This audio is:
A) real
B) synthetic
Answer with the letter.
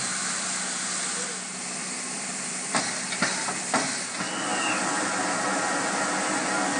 A